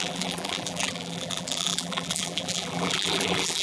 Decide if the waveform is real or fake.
fake